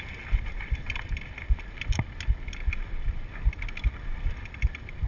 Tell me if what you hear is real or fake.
fake